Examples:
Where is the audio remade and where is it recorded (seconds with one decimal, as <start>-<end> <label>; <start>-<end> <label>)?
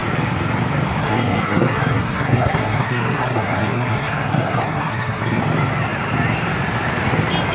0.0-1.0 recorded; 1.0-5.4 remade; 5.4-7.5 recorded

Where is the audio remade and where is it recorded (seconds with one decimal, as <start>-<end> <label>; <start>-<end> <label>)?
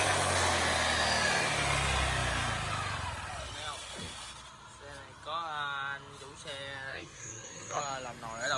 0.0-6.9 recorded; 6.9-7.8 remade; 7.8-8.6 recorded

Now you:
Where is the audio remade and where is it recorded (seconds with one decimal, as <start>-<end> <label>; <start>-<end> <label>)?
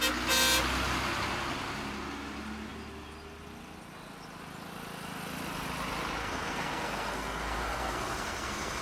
0.0-6.2 recorded; 6.2-8.8 remade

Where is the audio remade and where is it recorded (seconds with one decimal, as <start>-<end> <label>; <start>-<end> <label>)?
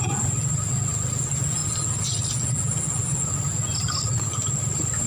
0.0-5.1 recorded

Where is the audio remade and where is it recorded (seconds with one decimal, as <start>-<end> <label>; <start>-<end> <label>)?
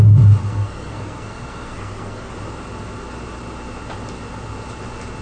0.0-0.4 recorded; 0.4-2.3 remade; 2.3-5.2 recorded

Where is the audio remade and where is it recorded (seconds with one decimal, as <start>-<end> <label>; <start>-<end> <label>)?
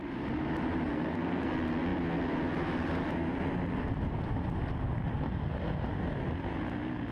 0.0-0.9 recorded; 0.9-1.5 remade; 1.5-7.1 recorded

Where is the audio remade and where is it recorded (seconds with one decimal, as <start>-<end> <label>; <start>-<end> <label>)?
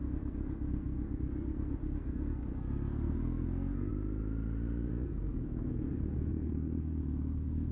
0.0-3.9 remade; 3.9-4.9 recorded; 4.9-7.7 remade